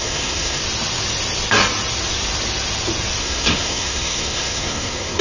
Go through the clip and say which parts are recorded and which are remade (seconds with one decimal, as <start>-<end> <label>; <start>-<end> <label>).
0.0-0.6 remade; 0.6-3.2 recorded; 3.2-5.2 remade